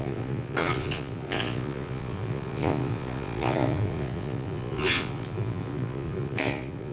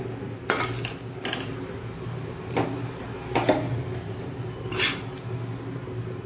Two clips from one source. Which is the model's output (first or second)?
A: first